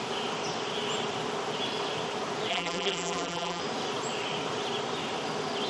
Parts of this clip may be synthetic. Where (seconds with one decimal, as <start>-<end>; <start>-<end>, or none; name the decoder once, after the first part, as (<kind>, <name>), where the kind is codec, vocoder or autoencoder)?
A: 2.5-3.6 (vocoder, BigVGAN v2)